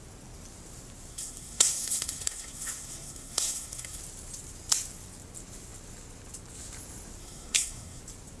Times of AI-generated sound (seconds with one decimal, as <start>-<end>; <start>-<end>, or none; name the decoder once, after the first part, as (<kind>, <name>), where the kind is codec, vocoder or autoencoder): 1.1-4.0 (codec, SNAC); 7.2-8.0

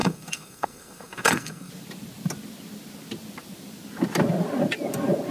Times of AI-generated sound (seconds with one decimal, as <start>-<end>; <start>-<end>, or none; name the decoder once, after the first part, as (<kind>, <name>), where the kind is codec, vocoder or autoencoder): 0.0-1.7 (codec, SNAC)

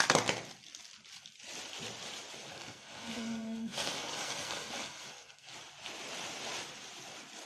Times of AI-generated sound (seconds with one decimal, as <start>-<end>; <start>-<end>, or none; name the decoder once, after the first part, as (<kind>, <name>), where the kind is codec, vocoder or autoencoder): 2.5-5.5 (codec, SNAC)

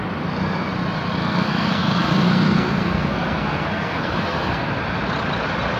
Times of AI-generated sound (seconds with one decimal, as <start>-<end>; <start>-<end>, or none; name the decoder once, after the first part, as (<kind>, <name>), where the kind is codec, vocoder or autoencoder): 1.2-4.7 (codec, SNAC)

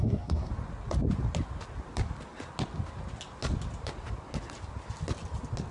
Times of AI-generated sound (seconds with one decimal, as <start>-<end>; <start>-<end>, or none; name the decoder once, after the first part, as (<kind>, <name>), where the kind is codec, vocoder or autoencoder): 0.0-0.5 (codec, SNAC)